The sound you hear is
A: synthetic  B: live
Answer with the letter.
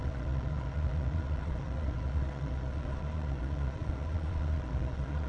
A